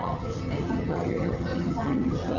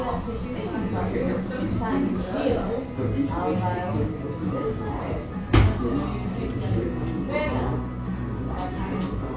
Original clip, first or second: second